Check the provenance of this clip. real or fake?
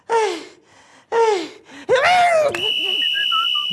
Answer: real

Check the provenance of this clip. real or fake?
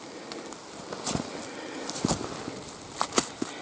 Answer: real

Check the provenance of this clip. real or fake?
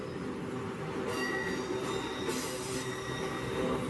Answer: real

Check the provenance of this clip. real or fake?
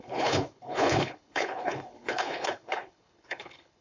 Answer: fake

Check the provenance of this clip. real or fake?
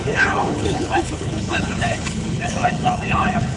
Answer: fake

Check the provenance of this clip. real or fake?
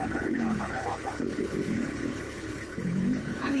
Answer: fake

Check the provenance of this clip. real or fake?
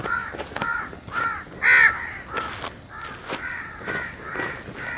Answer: real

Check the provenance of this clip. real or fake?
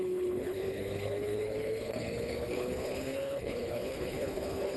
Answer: fake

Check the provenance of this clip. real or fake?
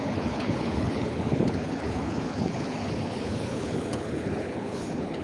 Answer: fake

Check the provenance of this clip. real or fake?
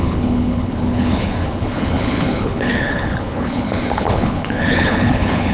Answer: fake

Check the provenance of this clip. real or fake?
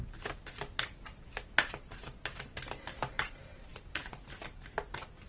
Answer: real